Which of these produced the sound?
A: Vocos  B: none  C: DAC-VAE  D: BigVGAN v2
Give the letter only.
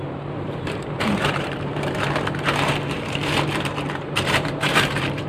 D